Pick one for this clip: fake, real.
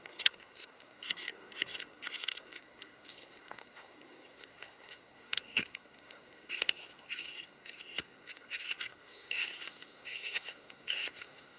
fake